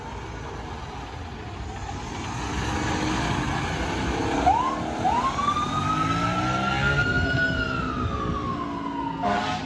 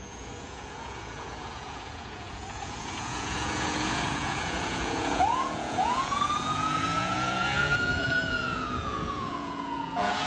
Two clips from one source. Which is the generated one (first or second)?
second